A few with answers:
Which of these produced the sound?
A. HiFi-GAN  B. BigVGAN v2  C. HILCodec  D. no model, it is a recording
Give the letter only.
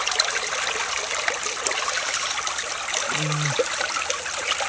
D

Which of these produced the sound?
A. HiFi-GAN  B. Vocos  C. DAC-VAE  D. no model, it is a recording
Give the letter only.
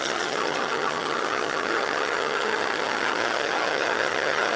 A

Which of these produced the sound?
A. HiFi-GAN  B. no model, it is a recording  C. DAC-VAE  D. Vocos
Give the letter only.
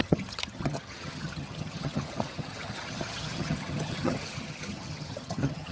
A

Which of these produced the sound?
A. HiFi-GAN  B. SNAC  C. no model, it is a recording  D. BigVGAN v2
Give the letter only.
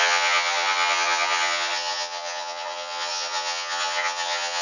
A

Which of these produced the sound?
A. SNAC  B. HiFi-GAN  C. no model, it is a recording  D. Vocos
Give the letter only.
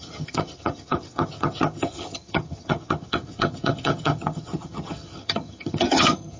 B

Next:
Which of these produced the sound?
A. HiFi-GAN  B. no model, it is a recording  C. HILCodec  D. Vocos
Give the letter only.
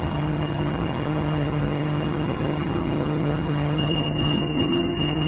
A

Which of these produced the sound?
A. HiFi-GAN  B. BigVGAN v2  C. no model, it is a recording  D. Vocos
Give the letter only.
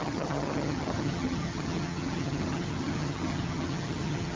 A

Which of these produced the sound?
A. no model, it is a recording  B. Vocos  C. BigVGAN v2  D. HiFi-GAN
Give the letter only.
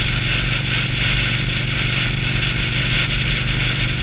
A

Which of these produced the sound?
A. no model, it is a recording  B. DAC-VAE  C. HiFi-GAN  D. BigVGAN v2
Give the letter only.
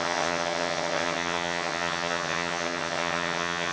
C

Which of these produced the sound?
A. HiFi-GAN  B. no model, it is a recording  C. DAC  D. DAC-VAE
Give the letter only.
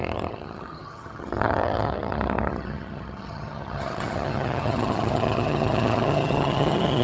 A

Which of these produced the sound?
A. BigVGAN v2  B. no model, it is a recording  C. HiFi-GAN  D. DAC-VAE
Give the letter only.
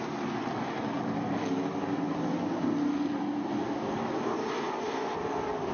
B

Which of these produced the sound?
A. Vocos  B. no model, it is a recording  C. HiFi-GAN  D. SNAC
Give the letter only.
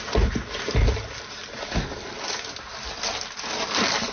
B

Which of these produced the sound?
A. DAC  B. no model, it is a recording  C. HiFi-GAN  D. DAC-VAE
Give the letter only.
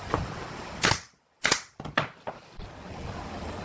B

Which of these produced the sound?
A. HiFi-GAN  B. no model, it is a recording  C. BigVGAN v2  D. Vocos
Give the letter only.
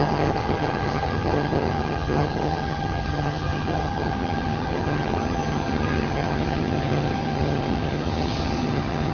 A